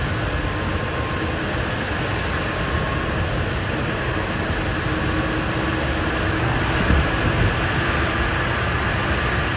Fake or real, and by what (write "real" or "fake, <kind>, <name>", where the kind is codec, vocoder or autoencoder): real